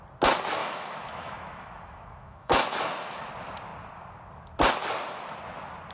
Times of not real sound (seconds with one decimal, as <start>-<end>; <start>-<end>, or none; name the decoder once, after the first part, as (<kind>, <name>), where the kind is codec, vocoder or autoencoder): 0.6-3.3 (autoencoder, DAC-VAE)